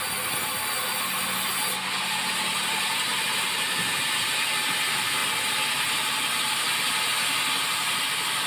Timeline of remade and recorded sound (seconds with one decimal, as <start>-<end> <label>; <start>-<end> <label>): 0.0-8.5 recorded